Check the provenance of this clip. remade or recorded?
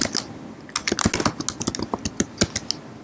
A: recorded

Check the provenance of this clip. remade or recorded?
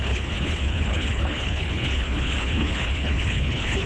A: remade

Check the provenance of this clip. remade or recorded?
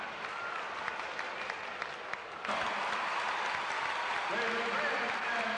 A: recorded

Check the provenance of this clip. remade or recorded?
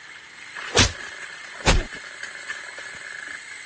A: recorded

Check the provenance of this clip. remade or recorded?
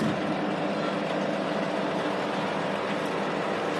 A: recorded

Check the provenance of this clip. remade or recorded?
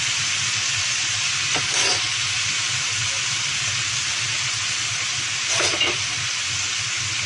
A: recorded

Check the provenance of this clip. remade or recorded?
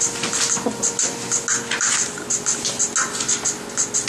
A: recorded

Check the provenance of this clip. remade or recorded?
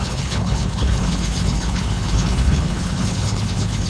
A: remade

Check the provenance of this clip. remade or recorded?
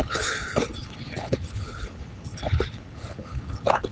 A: remade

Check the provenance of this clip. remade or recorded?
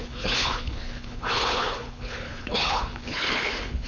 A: remade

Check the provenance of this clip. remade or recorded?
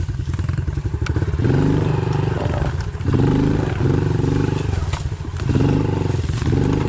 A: recorded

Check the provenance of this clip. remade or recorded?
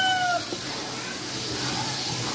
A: recorded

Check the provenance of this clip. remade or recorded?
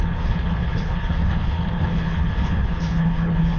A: remade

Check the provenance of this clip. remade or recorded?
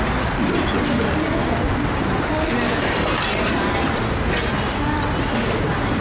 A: recorded